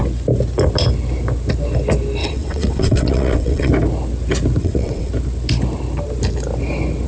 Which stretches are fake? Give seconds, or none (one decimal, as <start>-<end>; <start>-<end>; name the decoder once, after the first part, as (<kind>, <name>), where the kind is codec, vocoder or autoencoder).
2.2-3.7 (vocoder, WaveNeXt); 4.6-5.1